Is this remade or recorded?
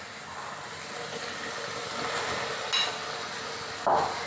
recorded